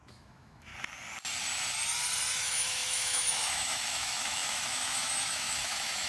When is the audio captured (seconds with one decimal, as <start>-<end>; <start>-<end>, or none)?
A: 0.7-2.4